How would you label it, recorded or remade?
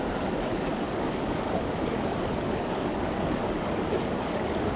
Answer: remade